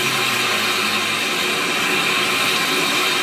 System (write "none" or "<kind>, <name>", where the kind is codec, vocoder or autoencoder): none